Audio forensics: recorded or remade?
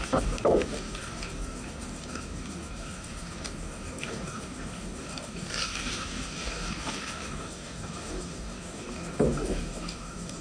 remade